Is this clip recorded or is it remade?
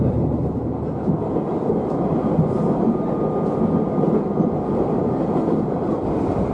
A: recorded